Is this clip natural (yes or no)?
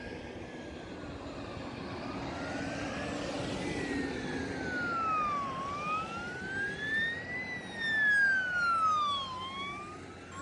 yes